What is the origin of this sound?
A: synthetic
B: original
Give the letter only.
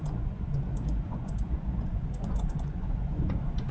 A